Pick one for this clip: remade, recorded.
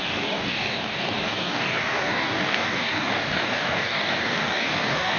remade